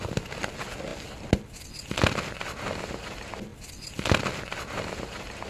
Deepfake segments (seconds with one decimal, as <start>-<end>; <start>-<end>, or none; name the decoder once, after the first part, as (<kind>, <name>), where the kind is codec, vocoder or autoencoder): none

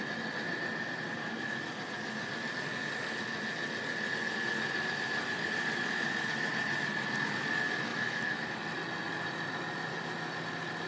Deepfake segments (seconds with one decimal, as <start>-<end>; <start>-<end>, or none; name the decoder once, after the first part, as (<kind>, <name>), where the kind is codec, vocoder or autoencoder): 1.2-1.7 (autoencoder, DAC-VAE); 7.9-8.5

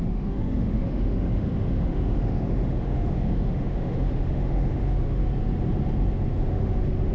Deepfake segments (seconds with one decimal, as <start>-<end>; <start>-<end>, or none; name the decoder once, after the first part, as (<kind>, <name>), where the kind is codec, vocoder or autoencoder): 0.0-5.2 (autoencoder, DAC-VAE); 6.5-7.1

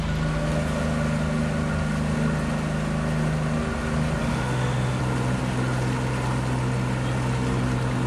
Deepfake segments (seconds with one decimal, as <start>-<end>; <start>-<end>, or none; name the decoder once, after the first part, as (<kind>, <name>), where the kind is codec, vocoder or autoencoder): 4.2-5.0 (autoencoder, DAC-VAE)

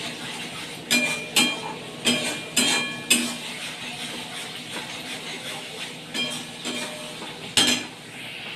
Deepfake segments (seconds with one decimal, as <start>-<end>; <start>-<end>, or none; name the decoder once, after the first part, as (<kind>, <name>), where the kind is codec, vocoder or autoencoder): 5.3-5.8 (autoencoder, DAC-VAE)

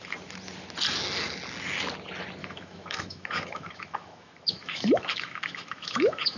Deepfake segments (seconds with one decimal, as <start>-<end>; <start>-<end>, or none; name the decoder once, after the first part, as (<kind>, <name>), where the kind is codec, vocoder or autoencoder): 2.4-6.4 (autoencoder, DAC-VAE)